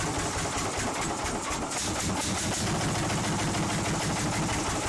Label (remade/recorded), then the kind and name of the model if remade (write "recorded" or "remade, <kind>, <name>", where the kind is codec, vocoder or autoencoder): recorded